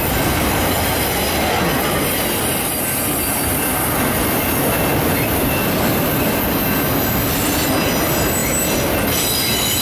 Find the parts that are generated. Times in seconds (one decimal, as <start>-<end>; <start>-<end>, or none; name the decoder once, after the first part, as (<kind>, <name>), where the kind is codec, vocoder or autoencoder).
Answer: 4.9-6.6 (vocoder, BigVGAN v2)